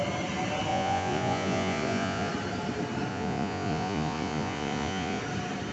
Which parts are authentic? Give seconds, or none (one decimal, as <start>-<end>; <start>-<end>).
0.0-0.7; 2.3-3.1; 5.2-5.7